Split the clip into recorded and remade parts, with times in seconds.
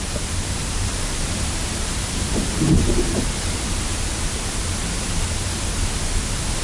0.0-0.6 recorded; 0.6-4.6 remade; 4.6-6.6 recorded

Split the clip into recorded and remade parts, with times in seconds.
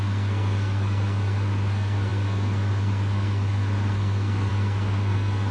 0.0-5.5 remade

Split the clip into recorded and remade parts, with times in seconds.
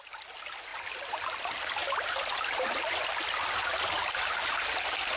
0.0-5.2 recorded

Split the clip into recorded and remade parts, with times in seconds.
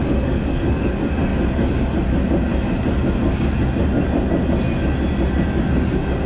0.0-6.3 recorded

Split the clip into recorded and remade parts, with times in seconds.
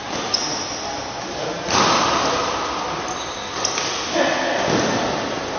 0.0-5.6 recorded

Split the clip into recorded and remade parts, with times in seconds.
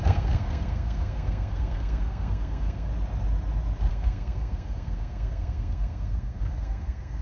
0.0-2.9 remade; 2.9-3.9 recorded; 3.9-7.2 remade